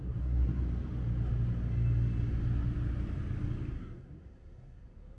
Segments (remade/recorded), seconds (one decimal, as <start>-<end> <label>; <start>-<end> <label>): 0.0-0.6 remade; 0.6-3.7 recorded; 3.7-5.2 remade